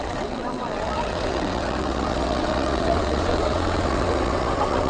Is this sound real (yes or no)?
no